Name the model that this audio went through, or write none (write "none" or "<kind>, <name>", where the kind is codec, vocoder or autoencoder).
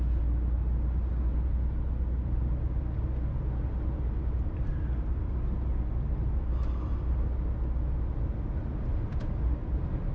none